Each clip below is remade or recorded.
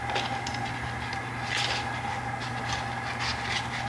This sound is recorded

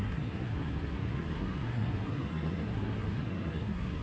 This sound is remade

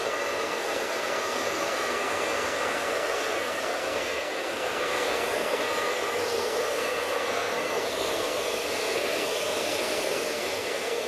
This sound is remade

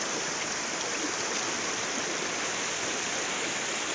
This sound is recorded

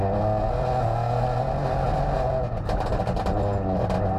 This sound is recorded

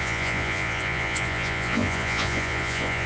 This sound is remade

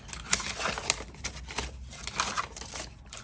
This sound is recorded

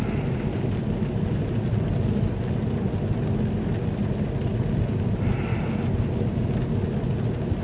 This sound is recorded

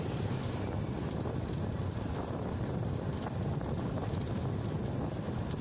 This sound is recorded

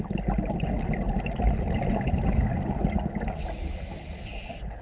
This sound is recorded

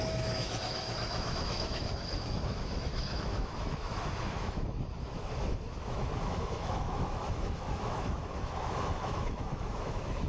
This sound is remade